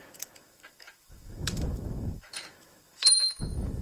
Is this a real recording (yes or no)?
no